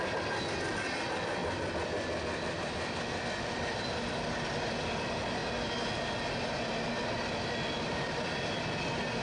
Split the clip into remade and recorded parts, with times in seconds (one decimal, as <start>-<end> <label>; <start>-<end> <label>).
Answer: 0.0-9.2 recorded